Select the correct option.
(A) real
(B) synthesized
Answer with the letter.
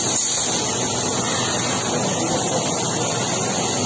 A